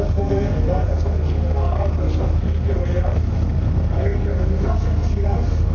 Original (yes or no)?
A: no